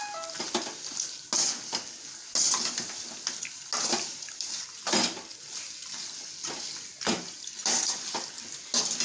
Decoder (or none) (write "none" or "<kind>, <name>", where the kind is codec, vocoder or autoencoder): none